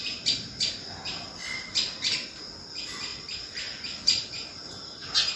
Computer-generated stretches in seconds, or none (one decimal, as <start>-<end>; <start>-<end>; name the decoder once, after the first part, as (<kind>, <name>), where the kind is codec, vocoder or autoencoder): 3.1-4.3 (vocoder, BigVGAN v2)